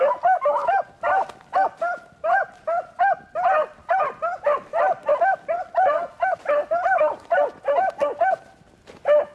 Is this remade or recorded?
recorded